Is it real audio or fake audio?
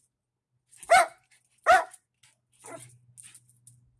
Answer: real